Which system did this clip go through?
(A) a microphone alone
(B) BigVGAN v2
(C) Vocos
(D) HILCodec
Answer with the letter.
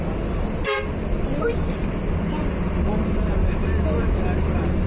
A